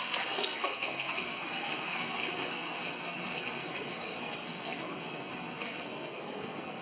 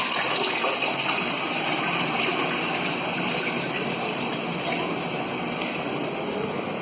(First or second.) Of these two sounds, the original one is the second